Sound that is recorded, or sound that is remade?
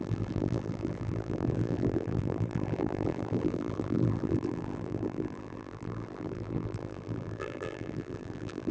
remade